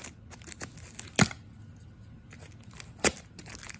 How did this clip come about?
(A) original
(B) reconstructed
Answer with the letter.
A